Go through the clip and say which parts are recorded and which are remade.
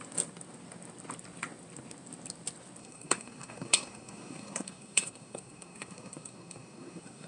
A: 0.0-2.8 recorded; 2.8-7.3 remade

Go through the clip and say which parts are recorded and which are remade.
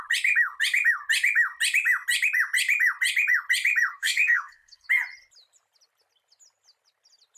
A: 0.0-3.9 recorded; 3.9-4.9 remade; 4.9-7.4 recorded